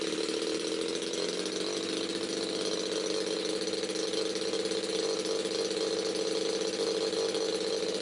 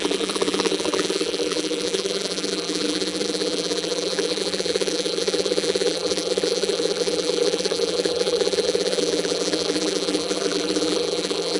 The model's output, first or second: second